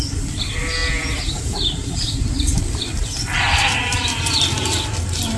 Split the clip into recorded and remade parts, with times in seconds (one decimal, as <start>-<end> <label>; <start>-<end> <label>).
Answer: 0.0-5.4 recorded